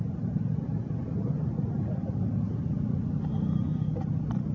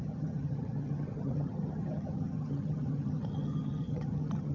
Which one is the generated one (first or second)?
second